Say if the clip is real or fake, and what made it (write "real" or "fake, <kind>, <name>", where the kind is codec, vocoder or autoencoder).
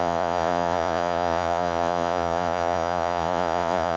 fake, vocoder, Vocos